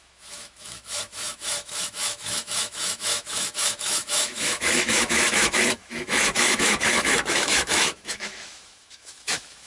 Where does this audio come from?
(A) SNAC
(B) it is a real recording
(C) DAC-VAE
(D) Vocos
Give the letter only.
C